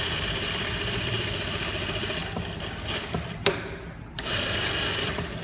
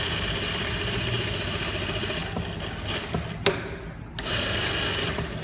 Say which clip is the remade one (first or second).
first